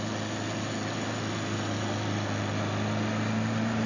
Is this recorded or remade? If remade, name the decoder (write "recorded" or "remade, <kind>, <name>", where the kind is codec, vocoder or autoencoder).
recorded